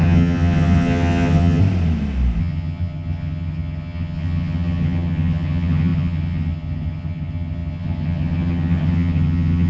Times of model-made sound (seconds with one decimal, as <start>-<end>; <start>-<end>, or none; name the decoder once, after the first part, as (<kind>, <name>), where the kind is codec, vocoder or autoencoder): 0.0-1.6 (vocoder, HiFi-GAN); 2.4-9.7